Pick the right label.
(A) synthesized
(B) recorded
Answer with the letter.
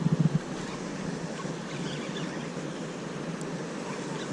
B